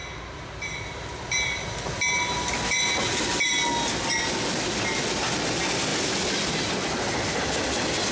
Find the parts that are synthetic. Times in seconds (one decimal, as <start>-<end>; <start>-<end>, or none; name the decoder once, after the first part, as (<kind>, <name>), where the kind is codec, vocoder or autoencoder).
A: none